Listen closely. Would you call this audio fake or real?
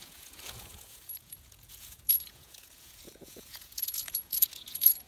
fake